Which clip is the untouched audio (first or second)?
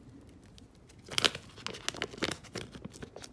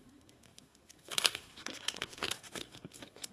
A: first